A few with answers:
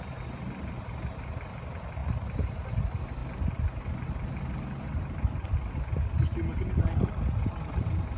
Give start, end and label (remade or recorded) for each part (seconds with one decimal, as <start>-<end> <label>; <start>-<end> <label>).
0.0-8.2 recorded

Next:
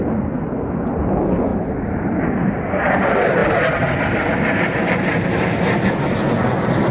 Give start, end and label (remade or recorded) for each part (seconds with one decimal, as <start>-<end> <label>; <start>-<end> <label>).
0.0-1.5 recorded; 1.5-2.5 remade; 2.5-6.9 recorded

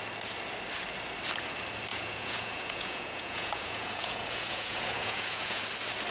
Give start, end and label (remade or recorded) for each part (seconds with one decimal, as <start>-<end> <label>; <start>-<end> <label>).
0.0-1.9 recorded; 1.9-5.6 remade; 5.6-6.1 recorded

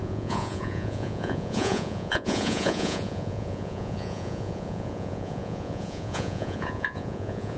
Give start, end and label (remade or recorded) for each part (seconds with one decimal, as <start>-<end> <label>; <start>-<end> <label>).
0.0-7.6 remade

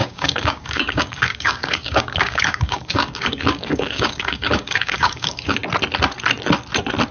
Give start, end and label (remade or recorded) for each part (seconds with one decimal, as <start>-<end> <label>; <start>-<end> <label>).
0.0-5.6 remade; 5.6-7.1 recorded